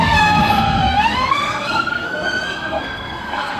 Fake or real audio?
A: fake